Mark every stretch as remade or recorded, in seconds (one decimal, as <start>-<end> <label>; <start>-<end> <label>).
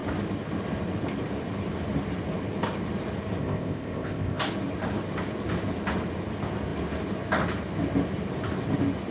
0.0-3.4 recorded; 3.4-4.4 remade; 4.4-9.1 recorded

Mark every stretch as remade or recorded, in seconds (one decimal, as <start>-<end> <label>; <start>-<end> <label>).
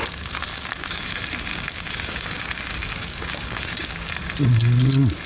0.0-0.5 recorded; 0.5-1.1 remade; 1.1-1.5 recorded; 1.5-4.1 remade; 4.1-5.3 recorded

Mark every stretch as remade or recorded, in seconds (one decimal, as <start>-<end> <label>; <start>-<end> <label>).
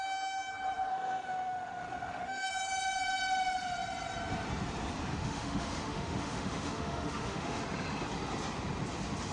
0.0-0.9 recorded; 0.9-2.5 remade; 2.5-5.1 recorded; 5.1-7.6 remade; 7.6-9.3 recorded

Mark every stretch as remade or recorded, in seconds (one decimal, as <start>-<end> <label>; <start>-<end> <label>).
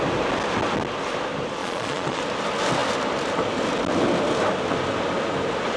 0.0-1.6 recorded; 1.6-2.2 remade; 2.2-5.8 recorded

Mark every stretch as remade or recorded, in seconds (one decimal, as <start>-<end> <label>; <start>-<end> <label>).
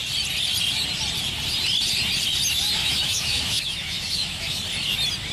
0.0-2.8 recorded; 2.8-4.6 remade; 4.6-5.3 recorded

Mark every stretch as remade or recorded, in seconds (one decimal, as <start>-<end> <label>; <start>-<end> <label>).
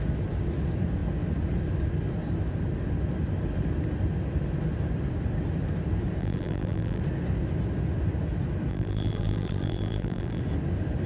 0.0-6.2 recorded; 6.2-7.0 remade; 7.0-8.7 recorded; 8.7-10.4 remade; 10.4-11.1 recorded